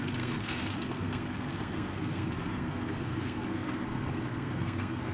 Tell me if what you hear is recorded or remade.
remade